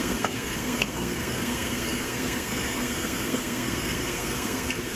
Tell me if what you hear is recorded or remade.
remade